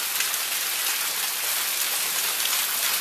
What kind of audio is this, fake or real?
real